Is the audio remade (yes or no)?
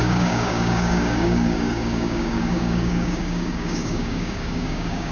yes